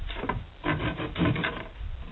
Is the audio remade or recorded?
recorded